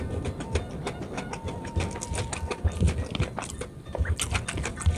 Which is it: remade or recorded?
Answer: recorded